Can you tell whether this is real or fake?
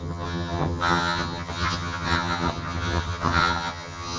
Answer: fake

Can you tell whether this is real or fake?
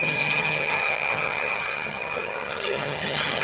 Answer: fake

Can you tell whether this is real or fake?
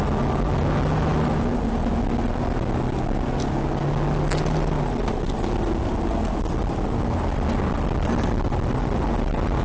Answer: real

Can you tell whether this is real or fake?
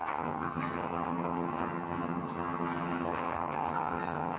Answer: fake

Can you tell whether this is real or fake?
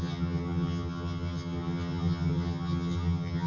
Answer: fake